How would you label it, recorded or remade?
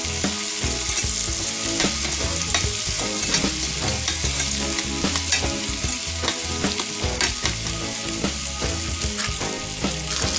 recorded